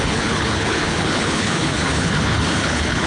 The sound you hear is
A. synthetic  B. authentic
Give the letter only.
A